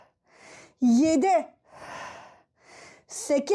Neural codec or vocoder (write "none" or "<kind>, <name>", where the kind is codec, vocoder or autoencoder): none